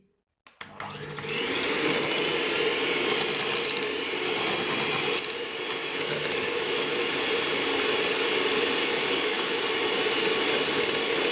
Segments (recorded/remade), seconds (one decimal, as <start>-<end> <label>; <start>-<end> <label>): 0.0-5.8 recorded; 5.8-7.1 remade; 7.1-8.8 recorded; 8.8-9.6 remade; 9.6-11.3 recorded